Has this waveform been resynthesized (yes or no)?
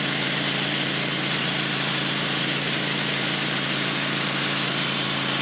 yes